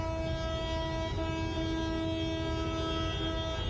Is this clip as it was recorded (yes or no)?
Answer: yes